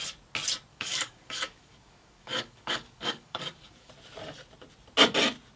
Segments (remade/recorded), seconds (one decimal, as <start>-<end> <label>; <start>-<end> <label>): 0.0-0.7 recorded; 0.7-3.9 remade; 3.9-5.6 recorded